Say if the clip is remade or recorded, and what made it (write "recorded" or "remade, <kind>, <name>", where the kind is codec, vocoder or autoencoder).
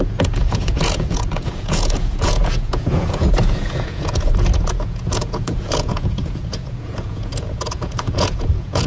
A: remade, vocoder, Vocos